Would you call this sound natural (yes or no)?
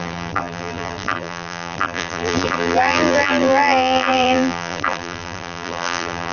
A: no